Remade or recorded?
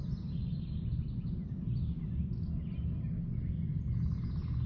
recorded